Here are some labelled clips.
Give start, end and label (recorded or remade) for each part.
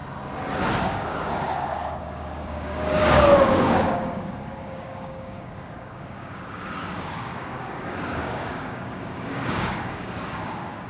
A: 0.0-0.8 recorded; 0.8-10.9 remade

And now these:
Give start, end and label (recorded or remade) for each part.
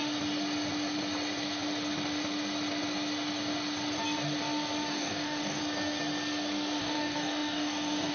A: 0.0-4.9 recorded; 4.9-5.6 remade; 5.6-6.8 recorded; 6.8-8.1 remade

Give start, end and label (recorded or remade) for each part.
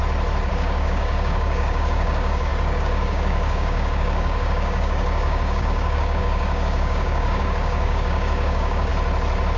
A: 0.0-0.5 recorded; 0.5-8.9 remade; 8.9-9.6 recorded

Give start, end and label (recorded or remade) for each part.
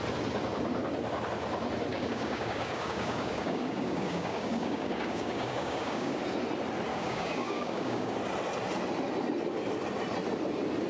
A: 0.0-1.9 recorded; 1.9-6.2 remade; 6.2-6.9 recorded; 6.9-8.1 remade; 8.1-10.9 recorded